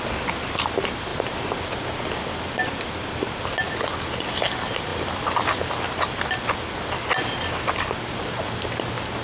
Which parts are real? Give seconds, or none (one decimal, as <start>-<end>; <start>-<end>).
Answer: 0.0-9.2